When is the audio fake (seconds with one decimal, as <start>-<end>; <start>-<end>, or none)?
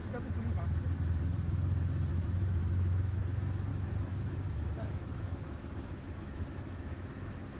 2.1-3.2; 3.7-7.6